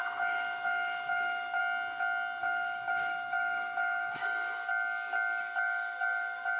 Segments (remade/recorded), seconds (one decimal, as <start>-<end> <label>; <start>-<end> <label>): 0.0-1.6 remade; 1.6-2.4 recorded; 2.4-4.6 remade; 4.6-5.4 recorded; 5.4-6.6 remade